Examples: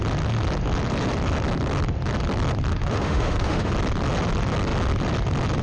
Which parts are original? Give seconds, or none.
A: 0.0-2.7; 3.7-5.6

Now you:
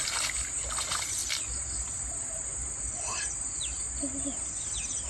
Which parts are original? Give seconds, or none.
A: 0.0-5.1

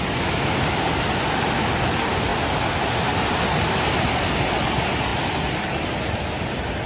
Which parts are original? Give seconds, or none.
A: 0.0-6.9

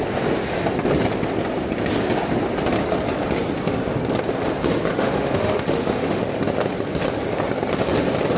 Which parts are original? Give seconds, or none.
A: 0.0-4.9; 6.2-8.4

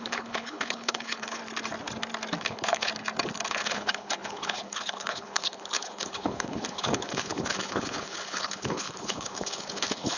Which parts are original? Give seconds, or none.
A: 1.4-2.4; 2.9-3.5

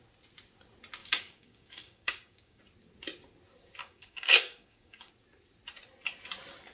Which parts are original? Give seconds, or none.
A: 0.0-1.0; 2.6-3.8; 5.1-6.7

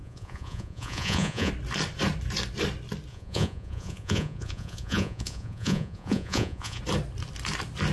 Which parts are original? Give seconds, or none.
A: 1.5-3.1; 6.8-7.9

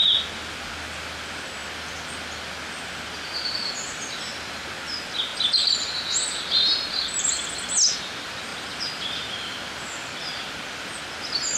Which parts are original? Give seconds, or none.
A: 0.0-11.6